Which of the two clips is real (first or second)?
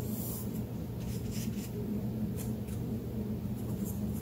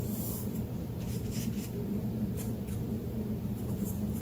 first